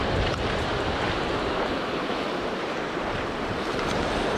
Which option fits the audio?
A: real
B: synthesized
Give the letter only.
B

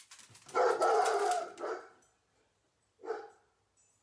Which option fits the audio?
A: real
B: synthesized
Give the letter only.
A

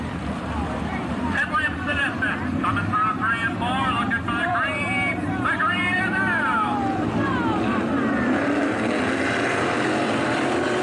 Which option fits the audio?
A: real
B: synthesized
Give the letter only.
B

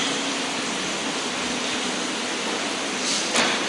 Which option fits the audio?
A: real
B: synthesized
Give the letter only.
A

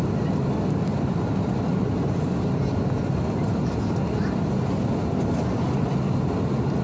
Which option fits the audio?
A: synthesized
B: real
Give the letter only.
B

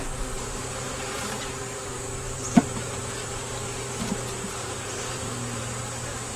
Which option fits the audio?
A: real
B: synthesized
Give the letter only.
B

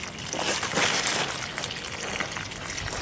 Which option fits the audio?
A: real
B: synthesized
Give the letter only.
A